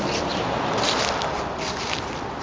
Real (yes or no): yes